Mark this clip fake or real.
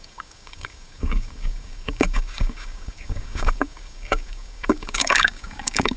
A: fake